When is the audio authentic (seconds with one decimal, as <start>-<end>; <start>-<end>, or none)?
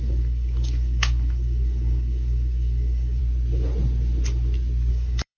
3.2-4.9